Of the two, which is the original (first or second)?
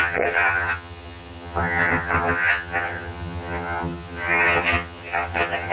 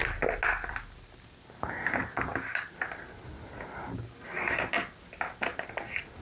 second